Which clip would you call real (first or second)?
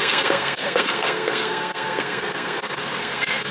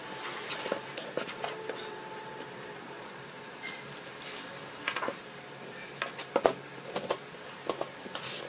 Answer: second